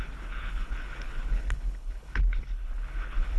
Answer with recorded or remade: remade